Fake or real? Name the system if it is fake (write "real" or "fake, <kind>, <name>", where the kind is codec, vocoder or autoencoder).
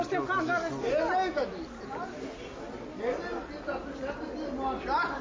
real